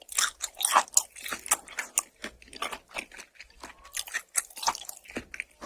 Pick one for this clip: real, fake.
real